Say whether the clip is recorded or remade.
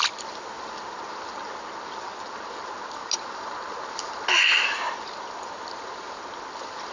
recorded